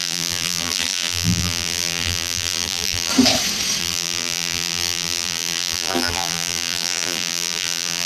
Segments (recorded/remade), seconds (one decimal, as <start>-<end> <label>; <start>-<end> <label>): 0.0-3.1 remade; 3.1-3.8 recorded; 3.8-8.1 remade

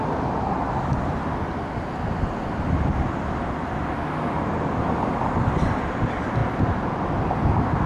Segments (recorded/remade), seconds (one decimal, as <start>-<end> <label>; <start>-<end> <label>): 0.0-6.4 recorded; 6.4-7.9 remade

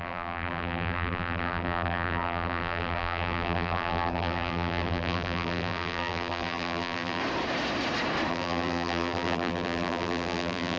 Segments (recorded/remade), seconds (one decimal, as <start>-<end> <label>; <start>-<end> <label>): 0.0-7.2 remade; 7.2-8.3 recorded; 8.3-10.8 remade

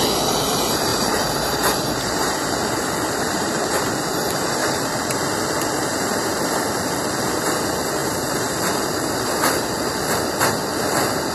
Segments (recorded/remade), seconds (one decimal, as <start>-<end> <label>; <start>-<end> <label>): 0.0-0.9 recorded; 0.9-3.9 remade; 3.9-4.6 recorded; 4.6-5.2 remade; 5.2-8.0 recorded; 8.0-9.1 remade; 9.1-11.3 recorded

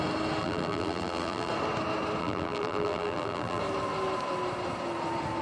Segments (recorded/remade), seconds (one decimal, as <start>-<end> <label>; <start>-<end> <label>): 0.0-0.4 recorded; 0.4-1.5 remade; 1.5-2.2 recorded; 2.2-3.6 remade; 3.6-5.4 recorded

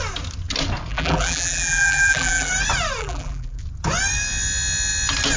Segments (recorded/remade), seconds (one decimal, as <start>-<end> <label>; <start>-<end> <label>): 0.0-0.9 recorded; 0.9-2.5 remade; 2.5-3.0 recorded; 3.0-3.6 remade; 3.6-5.4 recorded